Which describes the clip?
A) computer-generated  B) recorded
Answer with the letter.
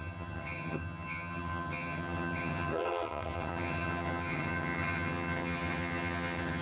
A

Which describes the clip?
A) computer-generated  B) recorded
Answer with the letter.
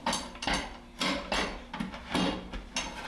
B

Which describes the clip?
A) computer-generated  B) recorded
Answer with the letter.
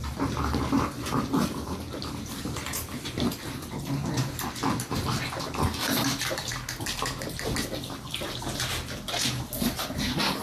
B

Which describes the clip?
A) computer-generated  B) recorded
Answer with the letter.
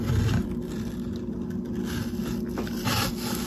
B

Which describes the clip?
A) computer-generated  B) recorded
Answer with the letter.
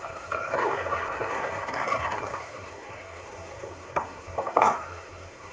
A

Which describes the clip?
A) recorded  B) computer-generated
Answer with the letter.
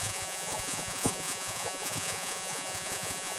B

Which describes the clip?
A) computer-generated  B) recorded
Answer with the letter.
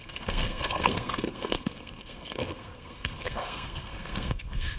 A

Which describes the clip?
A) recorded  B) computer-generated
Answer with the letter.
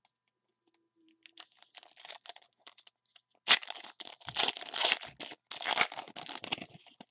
A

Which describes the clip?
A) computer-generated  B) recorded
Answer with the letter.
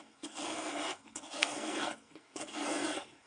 A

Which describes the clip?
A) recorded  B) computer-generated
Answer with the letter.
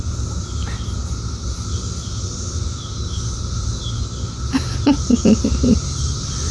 A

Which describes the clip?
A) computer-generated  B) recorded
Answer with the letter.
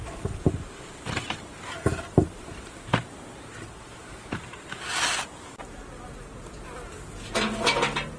B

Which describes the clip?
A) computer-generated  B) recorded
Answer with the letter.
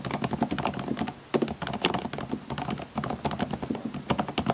B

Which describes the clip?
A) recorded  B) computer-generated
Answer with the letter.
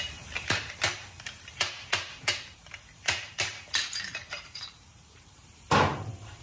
B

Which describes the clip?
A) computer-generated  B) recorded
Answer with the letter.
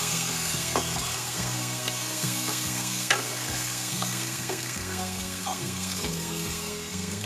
A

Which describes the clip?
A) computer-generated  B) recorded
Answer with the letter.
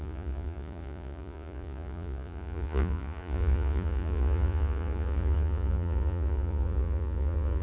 A